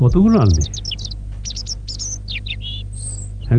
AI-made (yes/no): no